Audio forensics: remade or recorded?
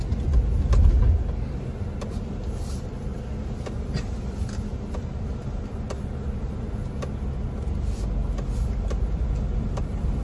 recorded